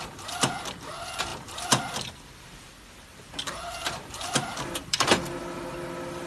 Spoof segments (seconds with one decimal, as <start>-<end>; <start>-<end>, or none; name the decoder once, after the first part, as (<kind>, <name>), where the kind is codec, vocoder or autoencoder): 1.3-2.3 (vocoder, BigVGAN v2); 3.1-5.4